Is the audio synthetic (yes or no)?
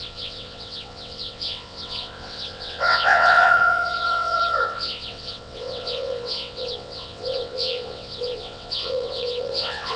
yes